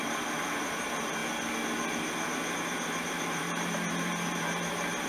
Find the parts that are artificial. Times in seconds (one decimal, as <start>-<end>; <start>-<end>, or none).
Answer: 0.0-1.2; 2.6-5.1